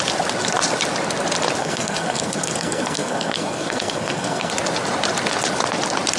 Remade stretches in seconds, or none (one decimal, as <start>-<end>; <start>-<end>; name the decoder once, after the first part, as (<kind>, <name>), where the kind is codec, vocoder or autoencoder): 1.6-4.5 (codec, SNAC)